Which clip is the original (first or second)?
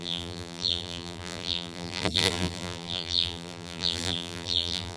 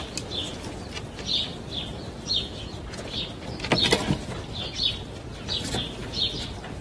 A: second